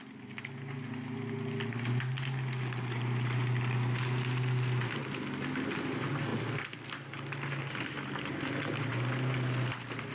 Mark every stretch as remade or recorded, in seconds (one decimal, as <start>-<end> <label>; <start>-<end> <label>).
0.0-10.1 recorded